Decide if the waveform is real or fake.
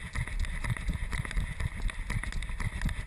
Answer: real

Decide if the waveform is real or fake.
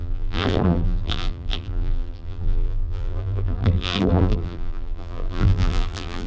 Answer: fake